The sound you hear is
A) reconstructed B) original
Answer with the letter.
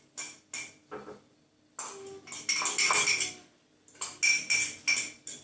B